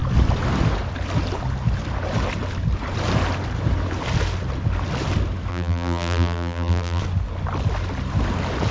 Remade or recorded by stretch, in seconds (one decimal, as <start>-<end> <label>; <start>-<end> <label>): 0.0-5.5 recorded; 5.5-7.0 remade; 7.0-8.7 recorded